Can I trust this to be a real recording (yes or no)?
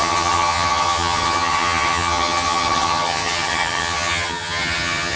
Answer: no